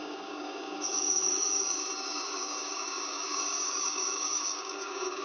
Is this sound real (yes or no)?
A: no